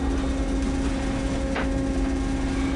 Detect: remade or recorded recorded